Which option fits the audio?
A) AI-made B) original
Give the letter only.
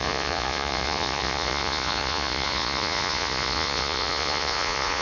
A